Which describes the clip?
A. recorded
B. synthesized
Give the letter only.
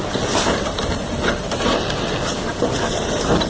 A